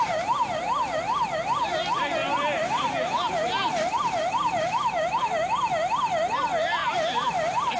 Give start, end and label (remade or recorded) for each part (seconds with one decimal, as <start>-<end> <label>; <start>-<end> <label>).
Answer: 0.0-7.8 recorded